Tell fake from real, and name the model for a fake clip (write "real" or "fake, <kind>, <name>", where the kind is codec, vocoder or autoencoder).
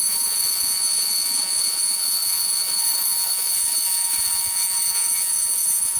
fake, vocoder, Vocos